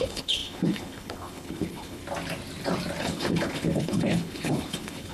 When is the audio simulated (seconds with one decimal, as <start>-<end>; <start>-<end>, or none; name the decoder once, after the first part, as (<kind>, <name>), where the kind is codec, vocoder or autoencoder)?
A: 0.0-2.0 (codec, HILCodec); 3.0-5.1